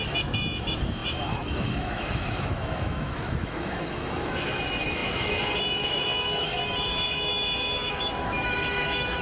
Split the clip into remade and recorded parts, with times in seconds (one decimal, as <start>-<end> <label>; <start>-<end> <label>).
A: 0.0-9.2 remade

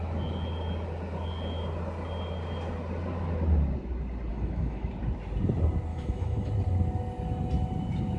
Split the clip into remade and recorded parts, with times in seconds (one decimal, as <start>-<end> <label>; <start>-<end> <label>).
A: 0.0-4.3 recorded; 4.3-4.9 remade; 4.9-5.9 recorded; 5.9-6.5 remade; 6.5-8.2 recorded

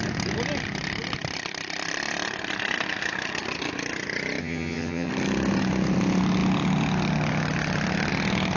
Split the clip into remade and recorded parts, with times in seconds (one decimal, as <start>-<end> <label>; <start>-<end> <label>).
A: 0.0-4.4 recorded; 4.4-5.1 remade; 5.1-8.6 recorded

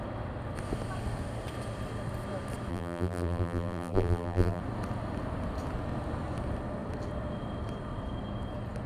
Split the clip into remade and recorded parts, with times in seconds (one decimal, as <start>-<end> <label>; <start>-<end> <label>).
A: 0.0-2.7 recorded; 2.7-4.6 remade; 4.6-8.9 recorded

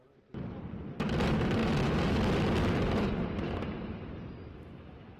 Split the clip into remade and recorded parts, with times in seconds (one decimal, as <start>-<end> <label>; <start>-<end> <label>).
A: 0.0-5.2 recorded

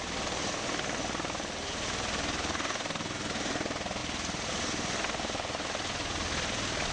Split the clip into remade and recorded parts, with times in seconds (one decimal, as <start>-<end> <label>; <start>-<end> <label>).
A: 0.0-6.9 recorded

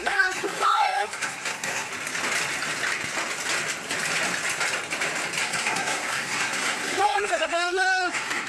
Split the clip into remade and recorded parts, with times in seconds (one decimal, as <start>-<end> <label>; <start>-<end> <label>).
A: 0.0-1.9 remade; 1.9-5.4 recorded; 5.4-8.5 remade